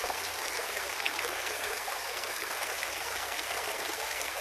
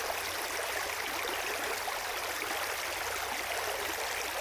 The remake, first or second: first